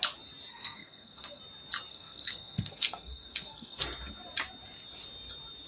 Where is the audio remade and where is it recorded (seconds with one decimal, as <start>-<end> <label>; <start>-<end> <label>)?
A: 0.0-0.5 recorded; 0.5-1.4 remade; 1.4-1.9 recorded; 1.9-3.8 remade; 3.8-5.7 recorded